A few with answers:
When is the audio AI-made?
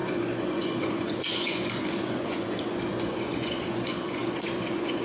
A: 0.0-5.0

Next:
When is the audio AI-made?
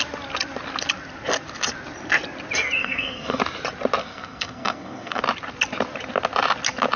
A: 2.8-3.4; 4.0-5.2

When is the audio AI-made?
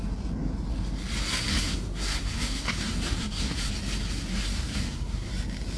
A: 1.5-3.7; 4.3-5.3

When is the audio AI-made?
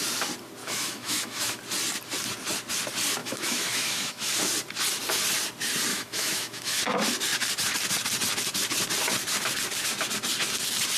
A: 0.6-1.6; 3.2-4.3; 5.9-6.8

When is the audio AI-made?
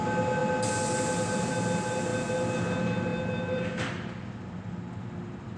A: none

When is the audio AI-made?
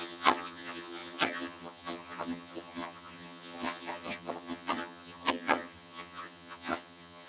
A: 0.0-7.3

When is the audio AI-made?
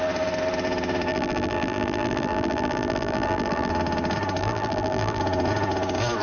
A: 1.1-3.7; 4.4-5.2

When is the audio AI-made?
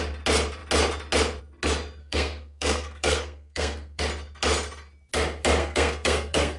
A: 2.0-4.0; 5.6-6.6